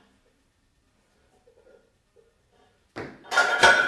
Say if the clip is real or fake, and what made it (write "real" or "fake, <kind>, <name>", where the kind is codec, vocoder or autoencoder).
real